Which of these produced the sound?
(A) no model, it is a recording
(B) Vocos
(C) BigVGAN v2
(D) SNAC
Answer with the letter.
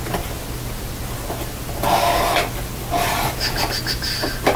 A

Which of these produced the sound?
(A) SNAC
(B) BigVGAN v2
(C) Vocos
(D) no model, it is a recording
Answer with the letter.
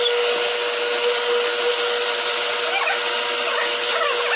D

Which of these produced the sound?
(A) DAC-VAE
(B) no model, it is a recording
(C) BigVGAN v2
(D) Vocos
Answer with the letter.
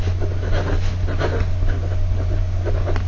B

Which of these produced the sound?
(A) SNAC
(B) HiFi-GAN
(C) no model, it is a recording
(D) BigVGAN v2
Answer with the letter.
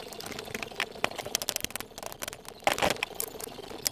C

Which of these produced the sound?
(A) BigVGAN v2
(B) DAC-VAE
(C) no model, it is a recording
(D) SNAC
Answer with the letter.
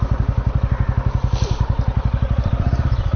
A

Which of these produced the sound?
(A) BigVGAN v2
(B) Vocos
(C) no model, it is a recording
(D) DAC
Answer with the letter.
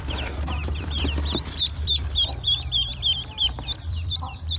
A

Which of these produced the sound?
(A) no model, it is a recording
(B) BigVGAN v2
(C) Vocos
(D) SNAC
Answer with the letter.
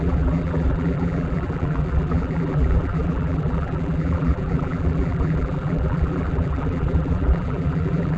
B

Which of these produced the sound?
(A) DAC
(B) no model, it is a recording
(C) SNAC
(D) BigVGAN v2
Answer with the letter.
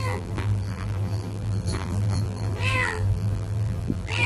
D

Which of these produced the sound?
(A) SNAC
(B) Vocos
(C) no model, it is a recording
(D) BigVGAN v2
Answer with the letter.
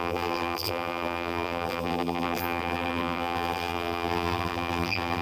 D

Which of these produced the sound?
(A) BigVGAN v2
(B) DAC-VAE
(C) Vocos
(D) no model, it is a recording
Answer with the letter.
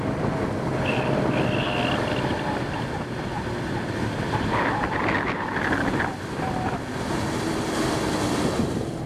D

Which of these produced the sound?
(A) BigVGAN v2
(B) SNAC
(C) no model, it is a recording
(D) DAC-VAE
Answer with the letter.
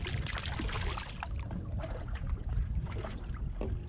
C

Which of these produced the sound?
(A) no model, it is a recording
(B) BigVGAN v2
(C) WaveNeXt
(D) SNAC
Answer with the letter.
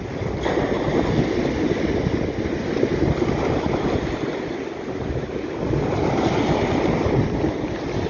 A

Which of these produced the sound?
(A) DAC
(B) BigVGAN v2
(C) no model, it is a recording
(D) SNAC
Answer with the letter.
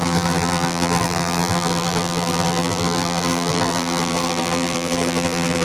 B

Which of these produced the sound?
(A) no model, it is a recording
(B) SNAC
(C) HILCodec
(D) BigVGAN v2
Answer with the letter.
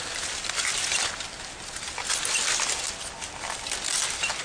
A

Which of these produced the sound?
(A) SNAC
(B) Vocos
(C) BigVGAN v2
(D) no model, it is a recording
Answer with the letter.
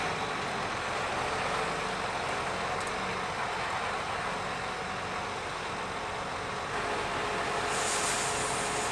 D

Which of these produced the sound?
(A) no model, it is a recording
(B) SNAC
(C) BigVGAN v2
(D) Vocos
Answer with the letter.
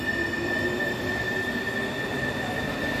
A